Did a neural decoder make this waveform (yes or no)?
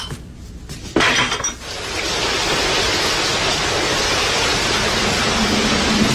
no